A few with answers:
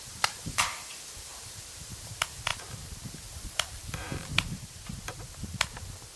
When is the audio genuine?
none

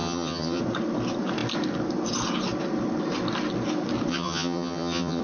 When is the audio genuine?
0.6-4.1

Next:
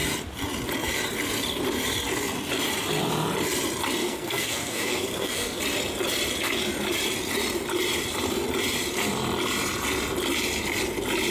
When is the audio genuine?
0.0-4.0; 5.6-11.3

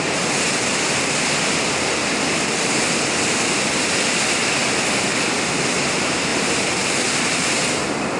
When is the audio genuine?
0.0-6.3; 7.4-8.2

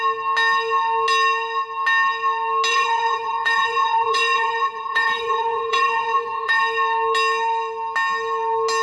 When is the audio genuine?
0.0-2.7; 6.6-8.8

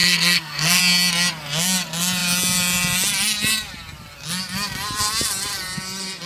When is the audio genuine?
0.8-6.3